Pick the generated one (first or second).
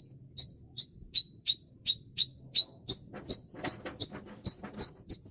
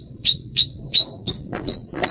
second